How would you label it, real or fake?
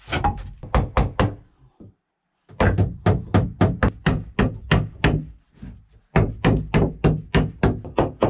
real